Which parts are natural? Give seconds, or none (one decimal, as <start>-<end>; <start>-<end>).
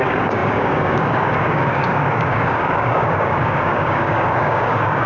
none